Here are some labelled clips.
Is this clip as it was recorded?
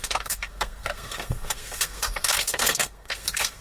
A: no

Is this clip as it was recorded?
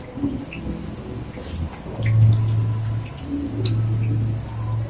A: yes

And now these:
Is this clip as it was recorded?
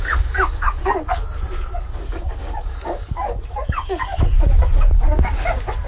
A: no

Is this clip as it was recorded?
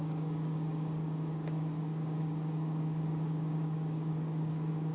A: no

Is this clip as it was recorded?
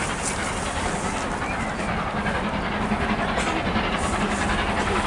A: yes